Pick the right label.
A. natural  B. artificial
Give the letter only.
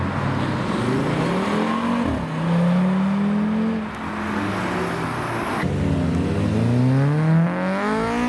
A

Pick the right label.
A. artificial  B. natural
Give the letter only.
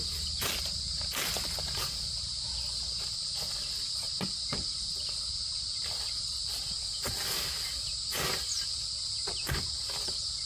B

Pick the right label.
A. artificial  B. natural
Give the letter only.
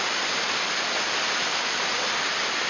A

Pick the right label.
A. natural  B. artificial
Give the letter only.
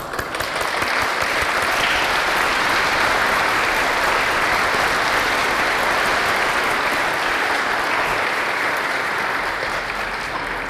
A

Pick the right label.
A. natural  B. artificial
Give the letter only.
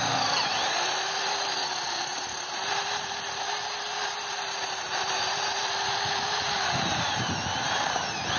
B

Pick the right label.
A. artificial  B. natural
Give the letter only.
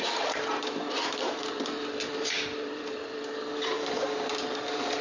A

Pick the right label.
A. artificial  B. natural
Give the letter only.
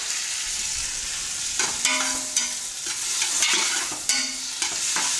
B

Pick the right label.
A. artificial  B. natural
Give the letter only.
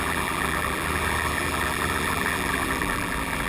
A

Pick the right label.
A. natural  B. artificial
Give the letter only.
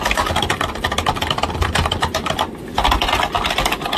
B